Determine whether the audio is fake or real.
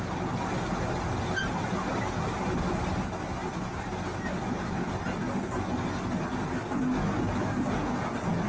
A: real